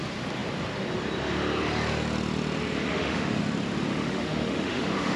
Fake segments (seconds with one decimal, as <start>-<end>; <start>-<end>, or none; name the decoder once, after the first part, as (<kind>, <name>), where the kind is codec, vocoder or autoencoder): 2.9-3.4 (autoencoder, DAC-VAE); 3.9-5.2